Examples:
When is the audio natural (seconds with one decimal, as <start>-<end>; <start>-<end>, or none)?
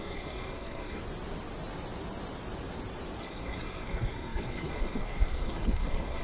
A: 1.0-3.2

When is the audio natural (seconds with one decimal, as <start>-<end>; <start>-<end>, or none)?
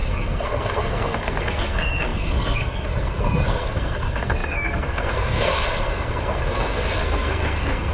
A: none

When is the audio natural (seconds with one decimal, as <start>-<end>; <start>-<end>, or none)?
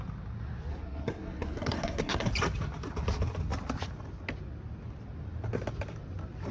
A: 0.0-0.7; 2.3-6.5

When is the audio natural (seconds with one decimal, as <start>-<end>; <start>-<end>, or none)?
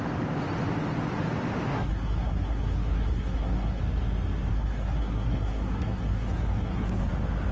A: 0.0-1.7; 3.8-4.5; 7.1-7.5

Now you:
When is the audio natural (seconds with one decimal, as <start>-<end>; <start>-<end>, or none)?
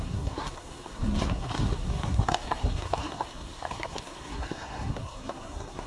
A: none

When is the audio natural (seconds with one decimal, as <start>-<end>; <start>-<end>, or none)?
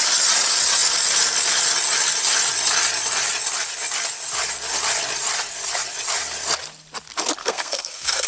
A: 0.0-7.4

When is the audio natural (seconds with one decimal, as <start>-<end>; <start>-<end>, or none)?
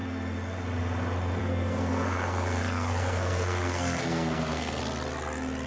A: 0.0-1.4; 4.8-5.7